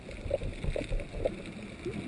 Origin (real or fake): real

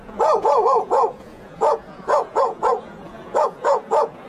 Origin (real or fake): fake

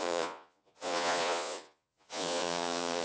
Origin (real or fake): fake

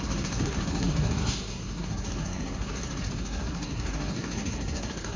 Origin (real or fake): fake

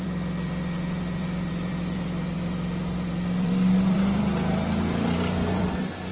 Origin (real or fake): fake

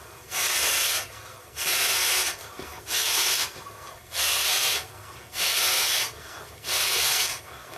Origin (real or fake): fake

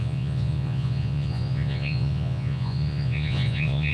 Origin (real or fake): fake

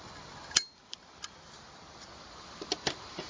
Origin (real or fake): real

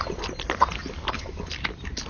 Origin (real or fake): real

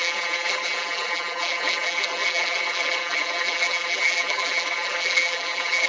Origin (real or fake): fake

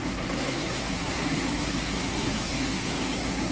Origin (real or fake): fake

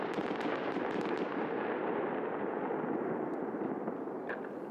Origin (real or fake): real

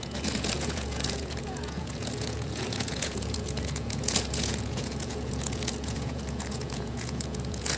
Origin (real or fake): fake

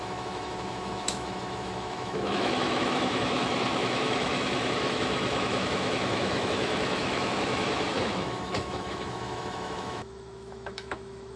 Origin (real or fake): fake